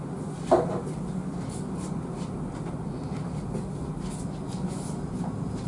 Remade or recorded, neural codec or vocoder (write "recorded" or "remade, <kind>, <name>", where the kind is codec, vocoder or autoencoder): recorded